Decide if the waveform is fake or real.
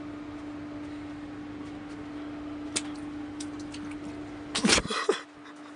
real